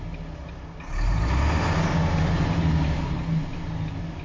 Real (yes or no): yes